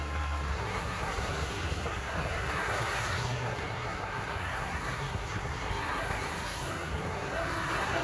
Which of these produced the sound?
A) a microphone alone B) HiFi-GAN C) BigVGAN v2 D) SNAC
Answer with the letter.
D